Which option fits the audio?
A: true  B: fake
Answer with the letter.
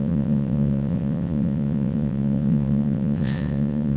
B